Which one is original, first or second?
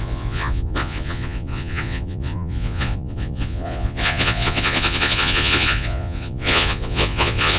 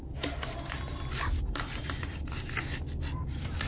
second